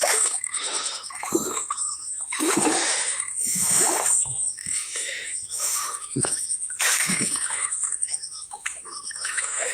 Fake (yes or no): yes